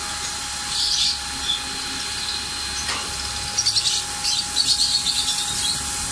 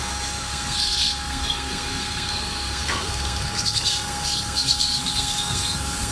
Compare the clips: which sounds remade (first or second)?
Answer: second